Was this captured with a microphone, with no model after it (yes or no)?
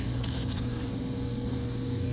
no